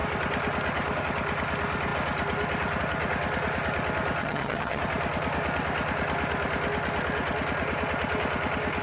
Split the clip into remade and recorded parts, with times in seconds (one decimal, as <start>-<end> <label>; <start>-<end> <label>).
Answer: 0.0-4.2 recorded; 4.2-4.8 remade; 4.8-8.8 recorded